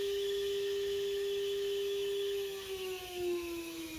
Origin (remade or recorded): remade